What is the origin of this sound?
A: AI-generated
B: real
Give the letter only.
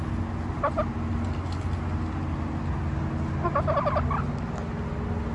B